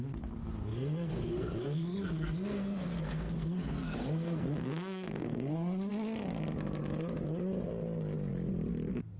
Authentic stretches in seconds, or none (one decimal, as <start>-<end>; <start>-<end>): 0.0-0.7; 5.9-9.2